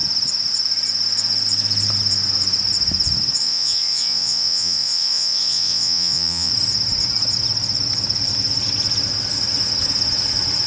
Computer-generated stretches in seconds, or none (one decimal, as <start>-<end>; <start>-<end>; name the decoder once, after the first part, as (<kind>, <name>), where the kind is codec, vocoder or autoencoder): 3.4-6.5 (vocoder, Vocos)